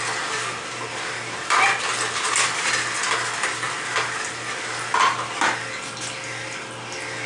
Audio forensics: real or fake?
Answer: real